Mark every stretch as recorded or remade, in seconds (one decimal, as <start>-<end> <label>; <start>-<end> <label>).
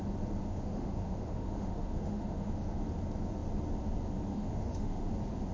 0.0-0.4 recorded; 0.4-2.8 remade; 2.8-4.3 recorded; 4.3-5.1 remade; 5.1-5.5 recorded